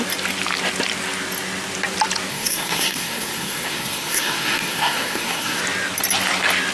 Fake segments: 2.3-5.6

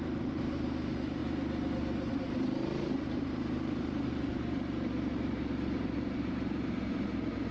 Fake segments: 0.0-1.2; 2.1-7.5

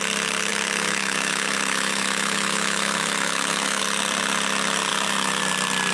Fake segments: 0.5-3.8; 4.9-5.4

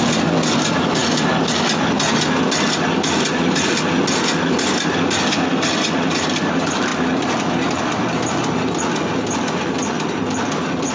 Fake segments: none

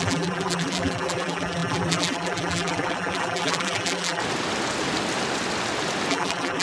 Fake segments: 0.0-4.2; 6.1-6.6